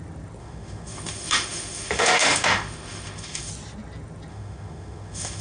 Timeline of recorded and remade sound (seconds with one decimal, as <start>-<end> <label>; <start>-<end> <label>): 0.0-0.4 recorded; 0.4-3.5 remade; 3.5-4.3 recorded; 4.3-5.4 remade